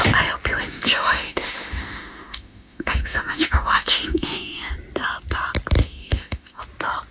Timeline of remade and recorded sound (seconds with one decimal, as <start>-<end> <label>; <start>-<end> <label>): 0.0-0.6 recorded; 0.6-4.7 remade; 4.7-5.8 recorded; 5.8-6.6 remade; 6.6-7.1 recorded